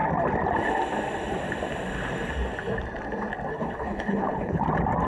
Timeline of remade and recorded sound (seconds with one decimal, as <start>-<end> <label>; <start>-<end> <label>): 0.0-3.5 recorded; 3.5-4.6 remade; 4.6-5.1 recorded